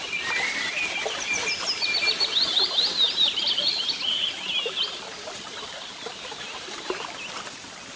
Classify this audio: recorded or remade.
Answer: recorded